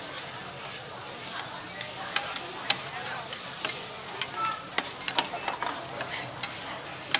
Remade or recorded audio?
recorded